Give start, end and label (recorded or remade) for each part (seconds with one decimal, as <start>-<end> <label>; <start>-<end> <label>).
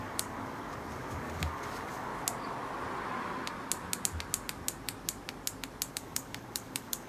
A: 0.0-2.1 remade; 2.1-5.9 recorded; 5.9-7.1 remade